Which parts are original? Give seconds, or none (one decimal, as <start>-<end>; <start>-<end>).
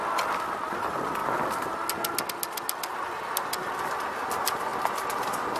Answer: 0.0-5.6